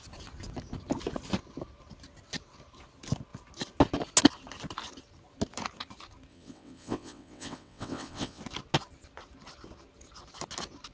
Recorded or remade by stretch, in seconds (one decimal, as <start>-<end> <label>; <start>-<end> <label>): 0.0-6.3 recorded; 6.3-8.4 remade; 8.4-10.9 recorded